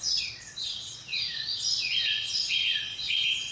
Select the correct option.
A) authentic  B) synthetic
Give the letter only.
B